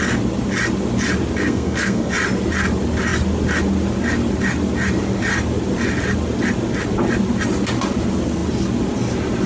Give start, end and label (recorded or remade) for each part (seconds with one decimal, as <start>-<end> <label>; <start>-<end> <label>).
0.0-1.4 recorded; 1.4-2.1 remade; 2.1-9.5 recorded